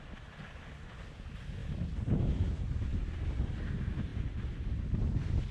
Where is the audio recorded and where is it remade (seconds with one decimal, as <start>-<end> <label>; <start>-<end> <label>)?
0.0-5.5 recorded